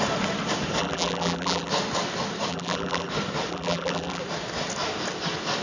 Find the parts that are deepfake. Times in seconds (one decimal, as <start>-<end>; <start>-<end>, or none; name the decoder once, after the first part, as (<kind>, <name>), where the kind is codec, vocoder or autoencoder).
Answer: 0.8-1.7 (vocoder, BigVGAN v2); 2.5-3.1; 3.5-4.2